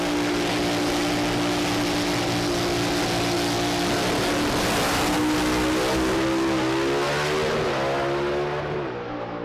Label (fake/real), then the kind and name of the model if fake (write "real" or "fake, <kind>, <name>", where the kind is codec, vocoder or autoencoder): real